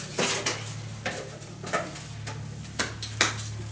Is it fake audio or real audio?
real